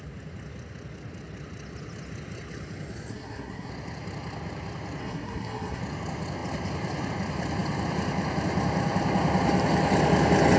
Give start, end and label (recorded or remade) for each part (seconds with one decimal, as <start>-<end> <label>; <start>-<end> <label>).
0.0-3.1 recorded; 3.1-3.7 remade; 3.7-5.0 recorded; 5.0-5.8 remade; 5.8-10.6 recorded